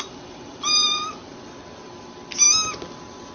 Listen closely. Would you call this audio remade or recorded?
recorded